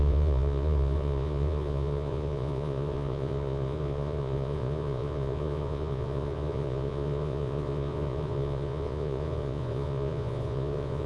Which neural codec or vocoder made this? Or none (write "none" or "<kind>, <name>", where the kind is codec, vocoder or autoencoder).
vocoder, Vocos